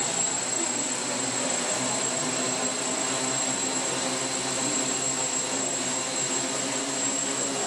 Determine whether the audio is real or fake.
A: real